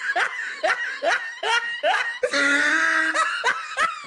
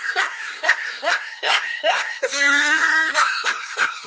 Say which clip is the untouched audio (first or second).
first